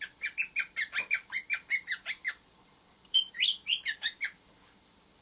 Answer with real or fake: fake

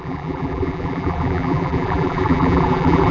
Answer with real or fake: fake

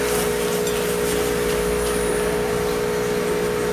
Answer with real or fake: real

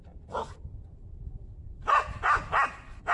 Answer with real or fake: fake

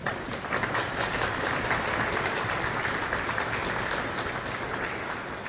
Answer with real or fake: real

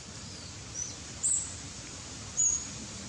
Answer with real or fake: fake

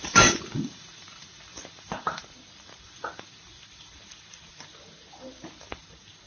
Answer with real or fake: fake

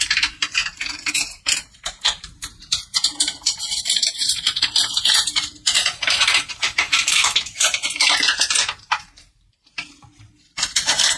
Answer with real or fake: fake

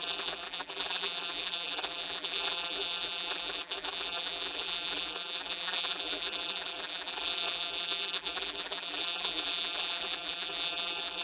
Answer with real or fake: fake